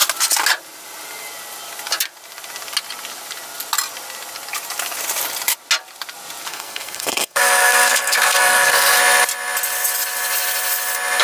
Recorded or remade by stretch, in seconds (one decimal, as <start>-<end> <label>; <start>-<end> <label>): 0.0-6.5 recorded; 6.5-9.0 remade; 9.0-11.2 recorded